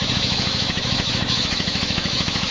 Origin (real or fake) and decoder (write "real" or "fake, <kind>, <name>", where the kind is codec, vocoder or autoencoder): fake, autoencoder, DAC-VAE